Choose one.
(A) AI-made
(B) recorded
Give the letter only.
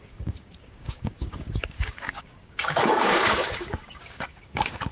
A